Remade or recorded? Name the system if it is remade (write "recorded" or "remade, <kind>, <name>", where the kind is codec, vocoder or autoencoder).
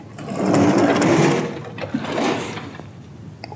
recorded